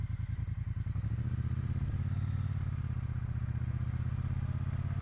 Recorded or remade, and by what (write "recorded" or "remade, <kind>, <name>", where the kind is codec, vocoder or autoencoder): recorded